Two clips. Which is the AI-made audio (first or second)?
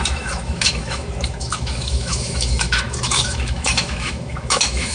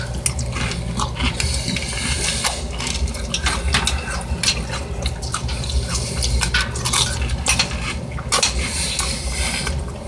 first